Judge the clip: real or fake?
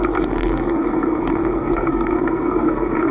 fake